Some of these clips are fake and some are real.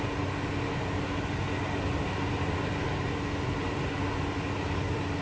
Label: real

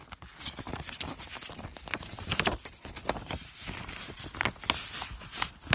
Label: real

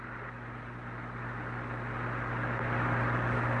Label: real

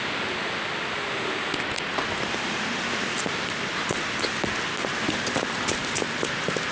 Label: real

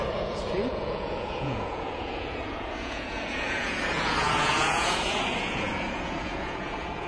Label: fake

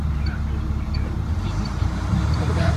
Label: fake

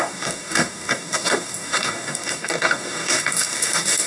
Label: fake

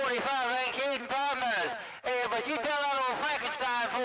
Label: fake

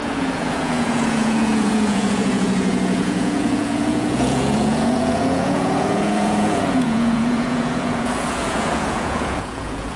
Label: fake